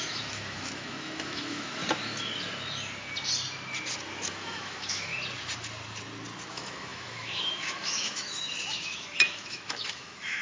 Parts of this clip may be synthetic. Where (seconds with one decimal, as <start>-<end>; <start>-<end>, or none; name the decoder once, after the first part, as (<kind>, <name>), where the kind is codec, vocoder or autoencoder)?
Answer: 0.0-1.8 (autoencoder, DAC-VAE); 4.3-5.1; 6.5-10.4